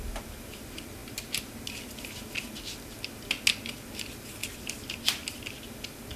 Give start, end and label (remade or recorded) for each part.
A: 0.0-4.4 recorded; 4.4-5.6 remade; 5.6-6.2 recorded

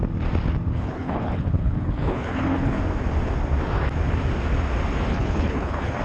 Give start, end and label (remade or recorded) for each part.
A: 0.0-0.7 recorded; 0.7-2.8 remade; 2.8-5.1 recorded; 5.1-6.0 remade

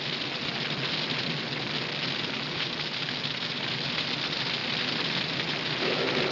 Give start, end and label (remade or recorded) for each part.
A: 0.0-6.3 recorded

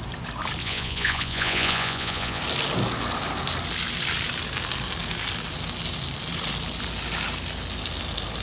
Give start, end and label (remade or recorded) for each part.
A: 0.0-0.6 recorded; 0.6-2.4 remade; 2.4-8.4 recorded

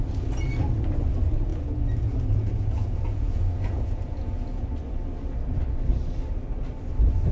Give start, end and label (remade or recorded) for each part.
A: 0.0-1.5 recorded; 1.5-4.6 remade; 4.6-7.3 recorded

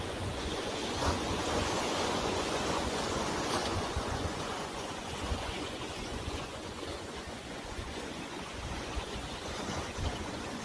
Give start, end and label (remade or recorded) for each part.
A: 0.0-10.6 remade

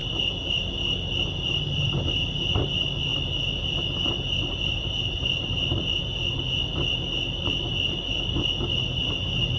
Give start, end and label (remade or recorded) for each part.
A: 0.0-9.6 recorded

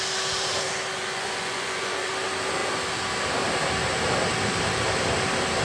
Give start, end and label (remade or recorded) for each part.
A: 0.0-1.0 recorded; 1.0-2.1 remade; 2.1-5.6 recorded